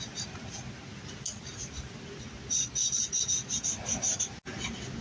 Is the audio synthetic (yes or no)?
no